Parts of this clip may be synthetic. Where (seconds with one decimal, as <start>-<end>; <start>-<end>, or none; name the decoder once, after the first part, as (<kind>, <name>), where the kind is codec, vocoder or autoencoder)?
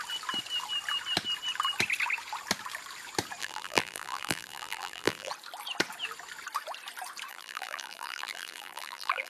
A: 3.4-5.3 (vocoder, BigVGAN v2); 7.3-9.3